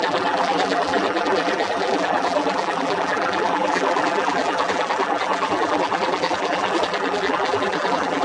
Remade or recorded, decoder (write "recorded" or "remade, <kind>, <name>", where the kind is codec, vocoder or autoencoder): remade, vocoder, BigVGAN v2